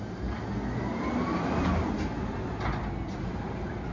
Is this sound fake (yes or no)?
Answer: no